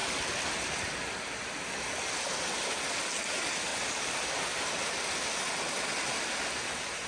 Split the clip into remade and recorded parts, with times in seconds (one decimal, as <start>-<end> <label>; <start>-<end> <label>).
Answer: 0.0-7.1 recorded